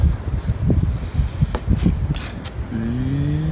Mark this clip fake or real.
real